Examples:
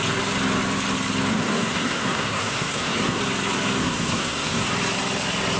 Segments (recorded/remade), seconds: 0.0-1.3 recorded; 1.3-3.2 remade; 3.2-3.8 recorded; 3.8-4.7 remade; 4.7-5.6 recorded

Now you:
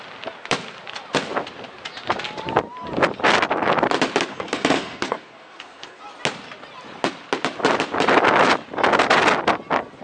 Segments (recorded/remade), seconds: 0.0-4.3 recorded; 4.3-6.0 remade; 6.0-10.0 recorded

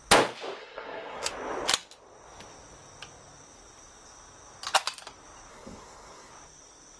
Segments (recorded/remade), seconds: 0.0-0.6 recorded; 0.6-1.3 remade; 1.3-5.5 recorded; 5.5-6.3 remade; 6.3-7.0 recorded

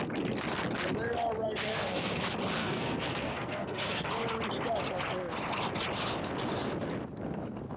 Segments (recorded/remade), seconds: 0.0-1.7 recorded; 1.7-2.2 remade; 2.2-2.6 recorded; 2.6-4.1 remade; 4.1-7.8 recorded